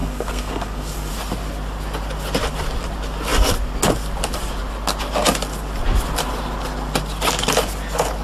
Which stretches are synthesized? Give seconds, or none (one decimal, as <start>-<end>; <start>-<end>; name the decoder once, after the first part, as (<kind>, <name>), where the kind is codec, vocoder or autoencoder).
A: 0.0-1.1 (codec, SNAC)